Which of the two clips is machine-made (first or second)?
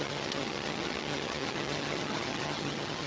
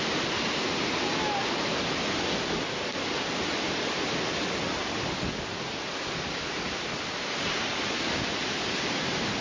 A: first